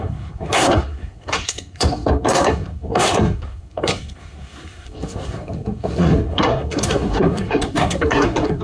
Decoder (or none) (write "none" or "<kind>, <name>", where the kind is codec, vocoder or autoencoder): codec, SNAC